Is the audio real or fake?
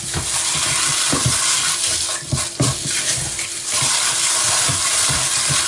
real